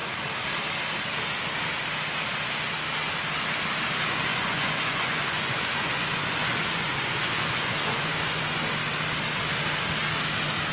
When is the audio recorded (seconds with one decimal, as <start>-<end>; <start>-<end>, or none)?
0.0-4.3; 8.6-10.7